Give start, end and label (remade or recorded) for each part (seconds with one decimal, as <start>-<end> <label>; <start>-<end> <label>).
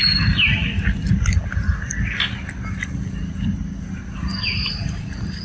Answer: 0.0-4.3 recorded; 4.3-5.4 remade